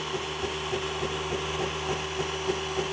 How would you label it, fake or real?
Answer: real